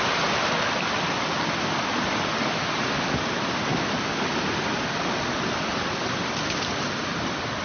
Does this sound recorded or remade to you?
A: recorded